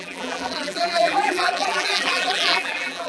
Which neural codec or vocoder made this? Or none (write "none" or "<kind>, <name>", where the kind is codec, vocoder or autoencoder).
vocoder, BigVGAN v2